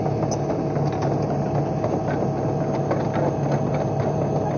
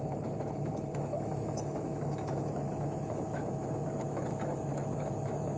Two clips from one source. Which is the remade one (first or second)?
second